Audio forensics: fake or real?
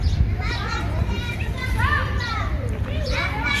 fake